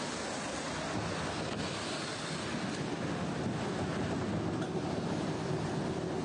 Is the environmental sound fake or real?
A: real